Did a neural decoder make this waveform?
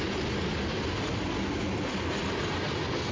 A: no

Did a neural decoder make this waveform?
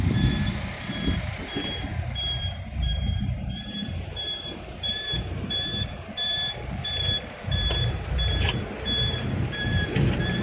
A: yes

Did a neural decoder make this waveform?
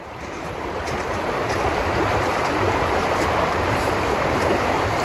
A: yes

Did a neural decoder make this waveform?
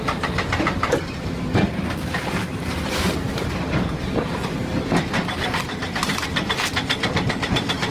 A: yes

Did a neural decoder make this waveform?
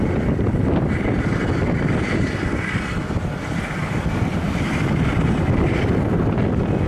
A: yes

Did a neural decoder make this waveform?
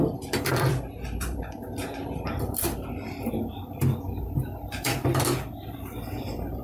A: yes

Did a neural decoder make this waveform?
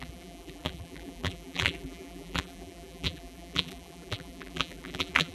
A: yes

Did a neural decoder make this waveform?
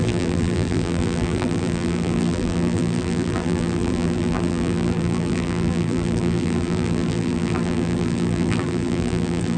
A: yes